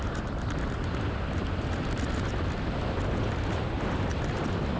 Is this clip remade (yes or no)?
no